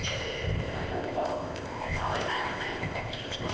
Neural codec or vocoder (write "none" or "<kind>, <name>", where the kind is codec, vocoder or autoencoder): codec, ZipCodec